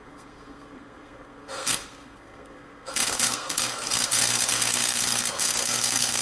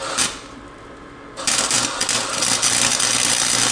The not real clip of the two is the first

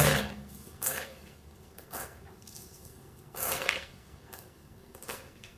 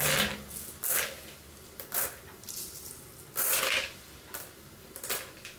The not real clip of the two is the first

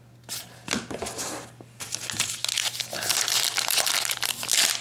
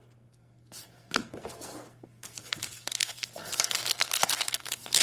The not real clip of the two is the second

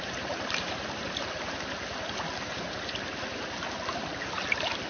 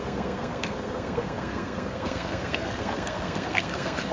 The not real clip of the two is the second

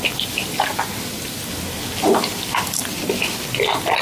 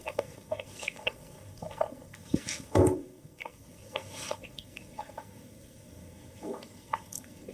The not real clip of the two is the second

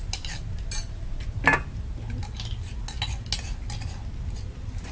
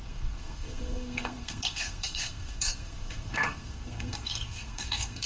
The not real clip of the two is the second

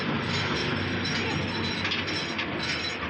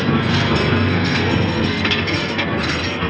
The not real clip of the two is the second